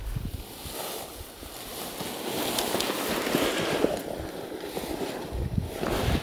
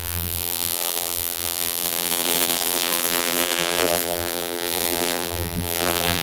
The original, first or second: first